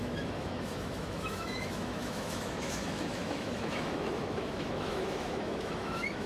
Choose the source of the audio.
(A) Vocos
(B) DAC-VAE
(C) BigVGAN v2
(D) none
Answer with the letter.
B